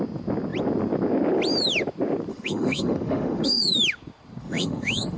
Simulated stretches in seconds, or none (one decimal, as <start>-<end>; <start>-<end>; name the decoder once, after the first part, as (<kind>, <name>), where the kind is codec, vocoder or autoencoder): 2.3-3.7 (autoencoder, DAC-VAE); 4.4-5.2